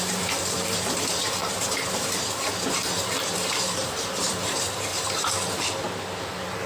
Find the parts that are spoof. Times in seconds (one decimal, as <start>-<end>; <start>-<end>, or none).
0.0-4.9; 5.6-6.7